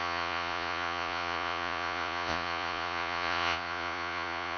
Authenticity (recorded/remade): remade